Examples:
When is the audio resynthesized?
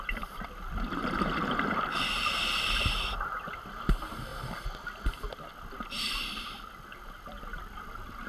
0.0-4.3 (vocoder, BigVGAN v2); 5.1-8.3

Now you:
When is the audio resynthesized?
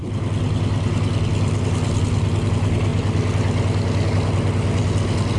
none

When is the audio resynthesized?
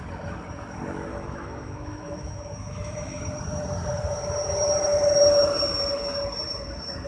1.1-3.2 (autoencoder, DAC-VAE)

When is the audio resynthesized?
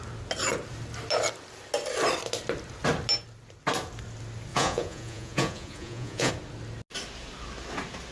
4.5-6.3 (vocoder, Vocos)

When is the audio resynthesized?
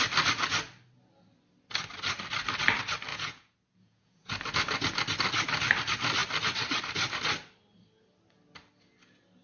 3.1-4.3 (vocoder, Vocos)